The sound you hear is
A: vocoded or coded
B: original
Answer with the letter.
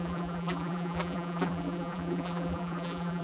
A